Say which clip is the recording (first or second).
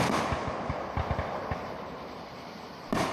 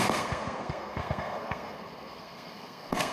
first